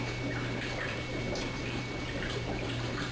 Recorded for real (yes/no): no